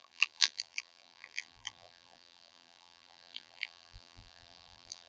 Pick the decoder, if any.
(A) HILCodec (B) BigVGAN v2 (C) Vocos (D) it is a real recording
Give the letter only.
B